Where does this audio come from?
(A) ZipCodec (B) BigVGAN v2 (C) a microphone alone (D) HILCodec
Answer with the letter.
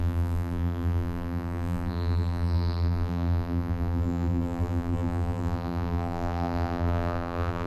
B